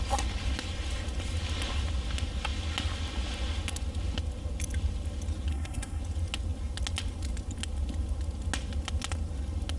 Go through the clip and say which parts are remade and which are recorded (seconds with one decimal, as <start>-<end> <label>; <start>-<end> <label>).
0.0-5.5 recorded; 5.5-6.0 remade; 6.0-9.8 recorded